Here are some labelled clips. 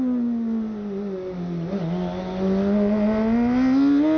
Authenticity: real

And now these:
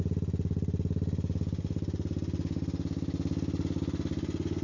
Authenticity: real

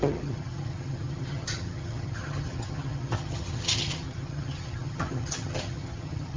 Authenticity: fake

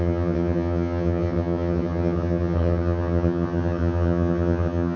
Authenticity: fake